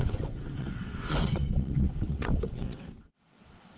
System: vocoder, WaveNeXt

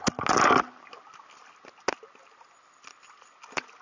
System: none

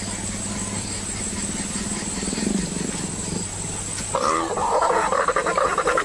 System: none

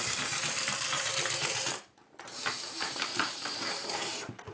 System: vocoder, BigVGAN v2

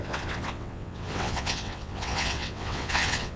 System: vocoder, WaveNeXt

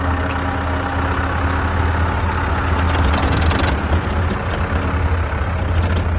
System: none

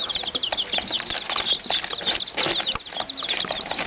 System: none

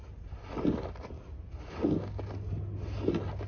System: none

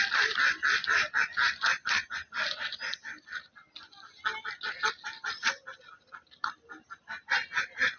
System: none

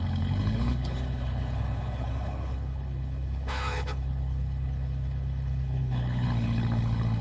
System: codec, HILCodec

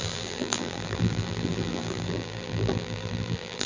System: vocoder, BigVGAN v2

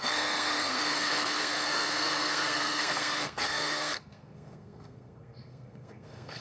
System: codec, SNAC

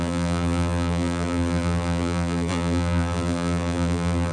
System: vocoder, BigVGAN v2